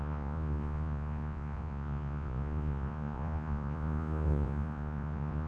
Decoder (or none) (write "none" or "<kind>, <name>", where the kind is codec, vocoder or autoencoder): vocoder, Vocos